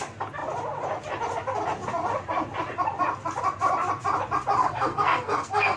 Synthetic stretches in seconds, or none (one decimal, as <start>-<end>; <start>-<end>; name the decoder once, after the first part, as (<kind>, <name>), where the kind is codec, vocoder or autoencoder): 4.6-5.8 (codec, SNAC)